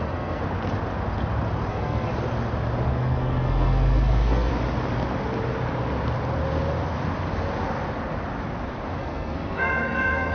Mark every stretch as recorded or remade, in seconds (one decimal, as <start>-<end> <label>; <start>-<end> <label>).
0.0-0.4 remade; 0.4-1.7 recorded; 1.7-2.1 remade; 2.1-2.9 recorded; 2.9-4.5 remade; 4.5-9.0 recorded; 9.0-10.3 remade